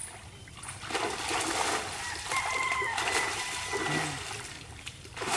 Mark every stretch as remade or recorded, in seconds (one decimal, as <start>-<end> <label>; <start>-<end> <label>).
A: 0.0-3.2 recorded; 3.2-3.7 remade; 3.7-4.8 recorded; 4.8-5.4 remade